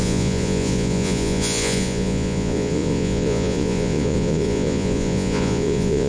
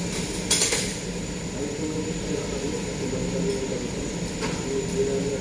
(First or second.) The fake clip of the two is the first